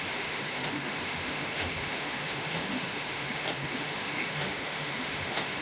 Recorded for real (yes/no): no